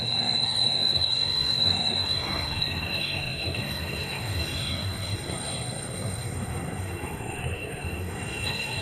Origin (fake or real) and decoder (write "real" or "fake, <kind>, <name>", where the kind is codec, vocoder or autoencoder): fake, codec, SNAC